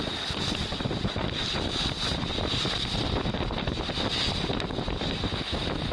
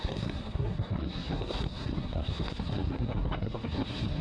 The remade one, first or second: second